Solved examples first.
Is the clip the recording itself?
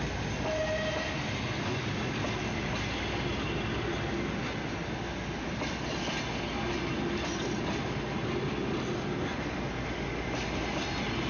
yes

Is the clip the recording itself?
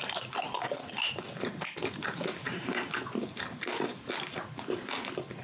yes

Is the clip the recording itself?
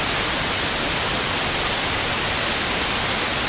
yes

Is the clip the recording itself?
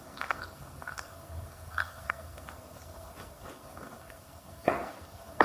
no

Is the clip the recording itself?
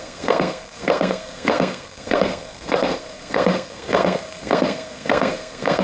no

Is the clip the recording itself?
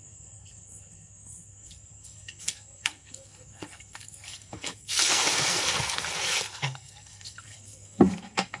no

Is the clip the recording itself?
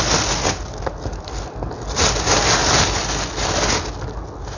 yes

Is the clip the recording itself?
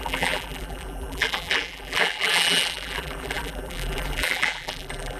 no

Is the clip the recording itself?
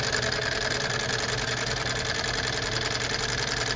yes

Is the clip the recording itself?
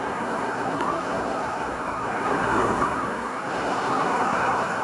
no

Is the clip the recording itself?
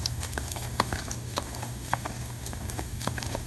no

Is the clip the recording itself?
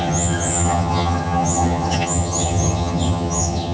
no